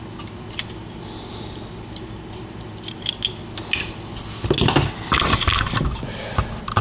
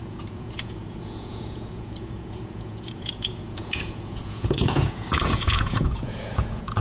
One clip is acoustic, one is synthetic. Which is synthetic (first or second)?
second